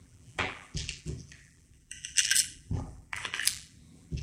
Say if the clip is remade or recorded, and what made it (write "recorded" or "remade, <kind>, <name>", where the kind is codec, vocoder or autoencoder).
remade, vocoder, BigVGAN v2